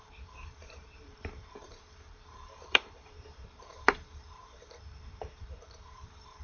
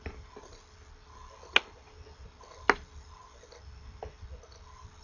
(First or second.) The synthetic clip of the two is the first